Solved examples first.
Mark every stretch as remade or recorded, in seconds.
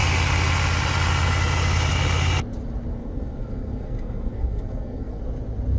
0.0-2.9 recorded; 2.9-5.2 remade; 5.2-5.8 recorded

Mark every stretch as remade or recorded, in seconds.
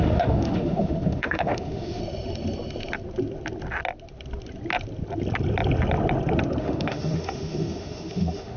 0.0-2.0 remade; 2.0-6.6 recorded; 6.6-8.6 remade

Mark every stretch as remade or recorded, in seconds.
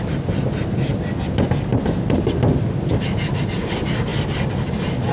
0.0-1.7 recorded; 1.7-2.6 remade; 2.6-4.1 recorded; 4.1-5.1 remade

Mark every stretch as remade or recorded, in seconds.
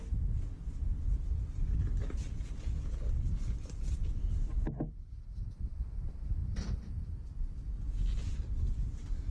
0.0-4.0 recorded; 4.0-4.5 remade; 4.5-9.3 recorded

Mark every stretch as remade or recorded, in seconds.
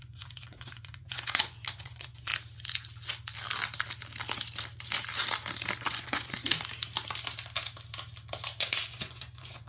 0.0-2.3 remade; 2.3-5.8 recorded; 5.8-6.4 remade; 6.4-8.8 recorded; 8.8-9.7 remade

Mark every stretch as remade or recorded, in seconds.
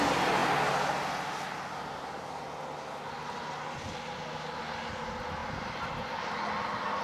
0.0-7.0 recorded